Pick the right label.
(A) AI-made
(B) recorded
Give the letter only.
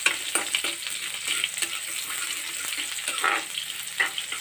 B